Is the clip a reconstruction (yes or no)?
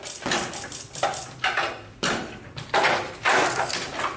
no